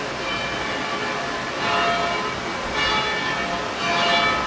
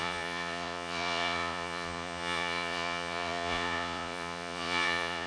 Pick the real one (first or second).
first